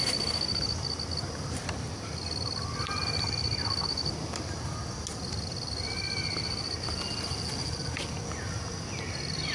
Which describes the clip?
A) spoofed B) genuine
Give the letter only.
B